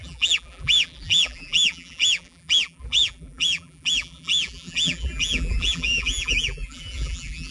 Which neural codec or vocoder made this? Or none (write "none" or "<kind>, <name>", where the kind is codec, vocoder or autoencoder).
vocoder, BigVGAN v2